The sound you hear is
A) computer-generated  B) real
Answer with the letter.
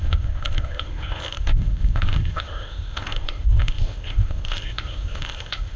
A